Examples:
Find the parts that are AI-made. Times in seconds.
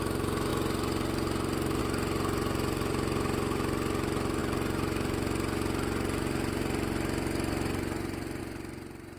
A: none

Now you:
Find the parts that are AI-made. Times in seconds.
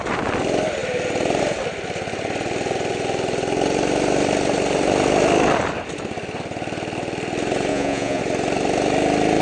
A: 7.7-8.2 (vocoder, Vocos)